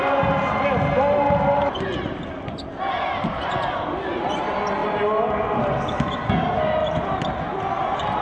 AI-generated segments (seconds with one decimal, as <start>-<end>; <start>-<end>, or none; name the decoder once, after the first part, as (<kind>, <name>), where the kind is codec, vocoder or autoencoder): none